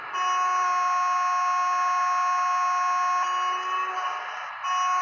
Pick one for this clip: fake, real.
real